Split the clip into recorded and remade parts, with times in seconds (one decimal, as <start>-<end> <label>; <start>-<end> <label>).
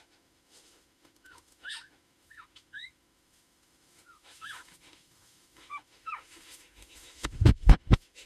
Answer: 0.0-8.3 remade